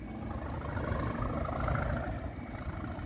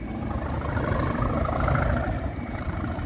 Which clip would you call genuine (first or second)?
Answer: first